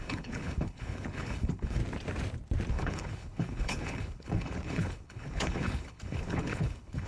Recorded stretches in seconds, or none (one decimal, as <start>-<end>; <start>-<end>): 1.8-2.7